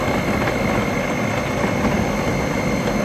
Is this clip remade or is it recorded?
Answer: recorded